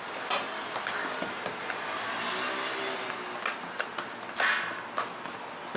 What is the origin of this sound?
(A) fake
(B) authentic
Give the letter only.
B